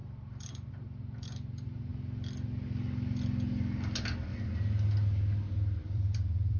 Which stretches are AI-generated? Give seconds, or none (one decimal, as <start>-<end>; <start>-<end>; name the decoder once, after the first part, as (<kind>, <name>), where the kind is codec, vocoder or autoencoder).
0.0-1.9 (vocoder, BigVGAN v2); 5.9-6.6